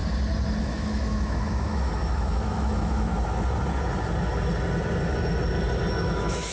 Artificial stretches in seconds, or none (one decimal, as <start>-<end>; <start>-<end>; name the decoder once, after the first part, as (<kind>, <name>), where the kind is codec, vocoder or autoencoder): 0.6-3.1 (autoencoder, DAC-VAE); 5.9-6.5